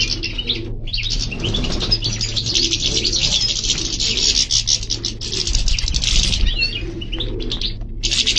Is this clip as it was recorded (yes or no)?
yes